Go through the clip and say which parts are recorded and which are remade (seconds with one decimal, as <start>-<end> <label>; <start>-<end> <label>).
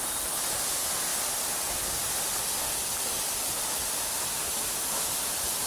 0.0-5.7 recorded